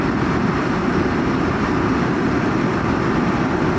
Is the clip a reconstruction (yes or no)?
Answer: yes